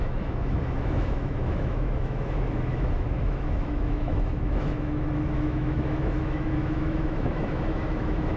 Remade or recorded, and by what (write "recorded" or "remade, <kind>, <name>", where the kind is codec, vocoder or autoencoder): remade, autoencoder, DAC-VAE